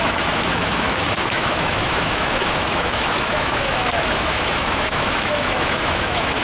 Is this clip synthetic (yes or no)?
yes